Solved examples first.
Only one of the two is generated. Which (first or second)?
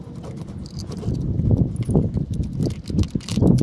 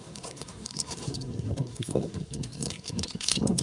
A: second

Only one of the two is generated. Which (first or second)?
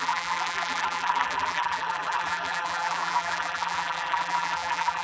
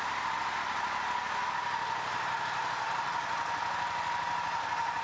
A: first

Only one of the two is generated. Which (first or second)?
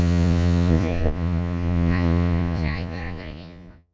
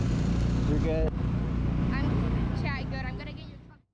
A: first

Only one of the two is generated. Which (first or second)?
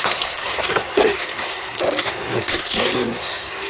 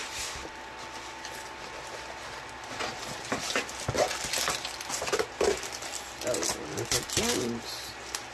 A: first